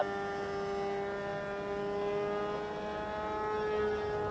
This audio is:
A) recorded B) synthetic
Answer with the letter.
A